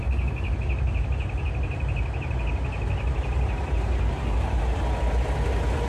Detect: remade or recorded recorded